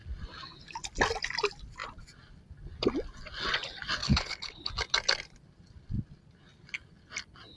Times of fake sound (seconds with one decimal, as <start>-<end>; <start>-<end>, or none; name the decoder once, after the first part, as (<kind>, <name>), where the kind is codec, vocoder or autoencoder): 4.0-4.7 (codec, HILCodec)